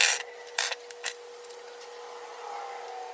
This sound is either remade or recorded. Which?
recorded